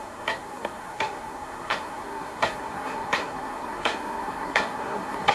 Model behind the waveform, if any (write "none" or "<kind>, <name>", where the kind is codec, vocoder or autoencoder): codec, SNAC